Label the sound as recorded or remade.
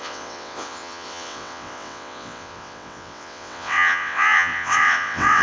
remade